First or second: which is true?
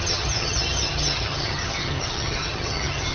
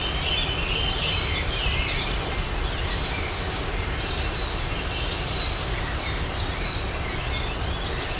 second